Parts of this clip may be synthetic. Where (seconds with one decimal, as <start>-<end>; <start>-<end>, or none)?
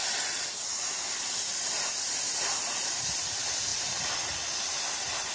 none